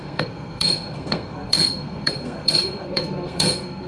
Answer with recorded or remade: remade